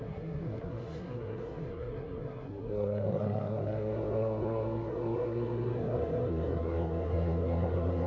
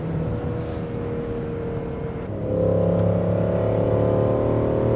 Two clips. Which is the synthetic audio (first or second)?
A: first